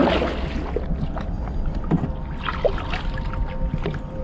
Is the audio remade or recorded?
recorded